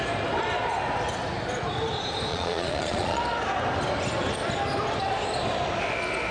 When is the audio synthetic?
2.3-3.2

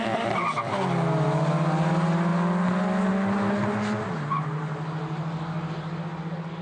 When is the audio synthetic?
none

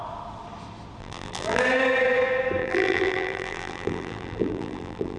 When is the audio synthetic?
1.0-1.6; 2.6-5.2

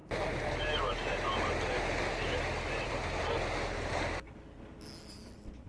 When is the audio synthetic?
none